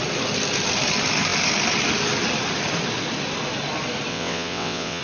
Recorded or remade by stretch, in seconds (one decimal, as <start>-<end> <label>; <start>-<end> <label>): 0.0-4.1 recorded; 4.1-5.0 remade